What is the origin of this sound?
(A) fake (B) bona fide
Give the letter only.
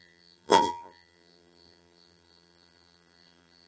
A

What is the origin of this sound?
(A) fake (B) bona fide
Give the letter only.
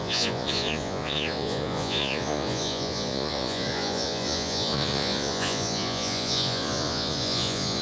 A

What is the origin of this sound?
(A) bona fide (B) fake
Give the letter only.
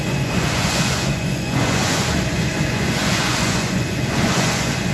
B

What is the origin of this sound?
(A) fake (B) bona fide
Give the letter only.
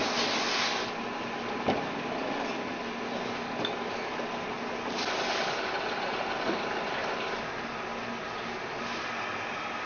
B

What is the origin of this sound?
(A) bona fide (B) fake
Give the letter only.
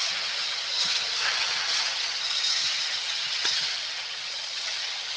B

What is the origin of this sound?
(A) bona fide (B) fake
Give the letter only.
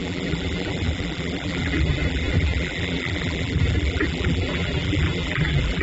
B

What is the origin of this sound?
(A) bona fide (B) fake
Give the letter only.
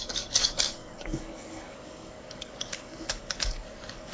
B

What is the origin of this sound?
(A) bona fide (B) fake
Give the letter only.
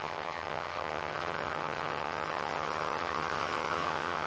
B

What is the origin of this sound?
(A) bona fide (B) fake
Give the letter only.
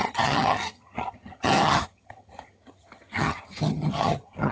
B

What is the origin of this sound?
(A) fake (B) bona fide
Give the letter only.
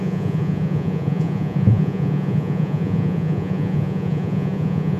A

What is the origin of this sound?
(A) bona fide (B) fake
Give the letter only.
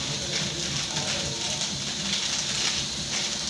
A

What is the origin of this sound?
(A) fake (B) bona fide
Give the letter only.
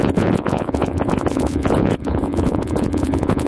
A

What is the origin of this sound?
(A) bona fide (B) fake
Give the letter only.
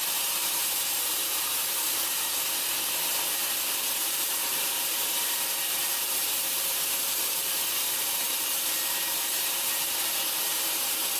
B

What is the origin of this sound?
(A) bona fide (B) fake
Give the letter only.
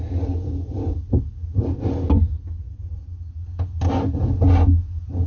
A